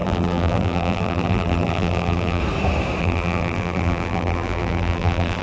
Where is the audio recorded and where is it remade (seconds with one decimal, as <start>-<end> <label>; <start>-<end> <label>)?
0.0-2.4 remade; 2.4-3.0 recorded; 3.0-5.4 remade